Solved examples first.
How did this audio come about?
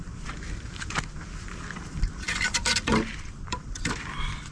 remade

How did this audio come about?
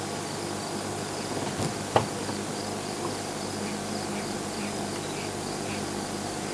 recorded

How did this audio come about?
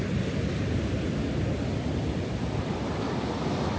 recorded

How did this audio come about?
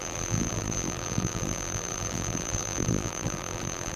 remade